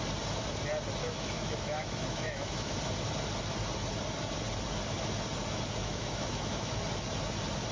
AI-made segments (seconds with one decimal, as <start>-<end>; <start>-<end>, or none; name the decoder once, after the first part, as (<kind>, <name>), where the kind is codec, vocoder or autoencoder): 1.0-2.8 (autoencoder, DAC-VAE); 5.8-6.8